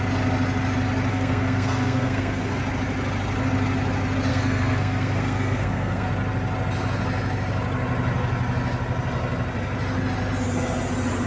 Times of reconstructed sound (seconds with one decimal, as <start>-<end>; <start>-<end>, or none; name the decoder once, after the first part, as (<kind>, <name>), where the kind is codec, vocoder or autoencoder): 1.1-2.6 (codec, SNAC); 4.3-6.1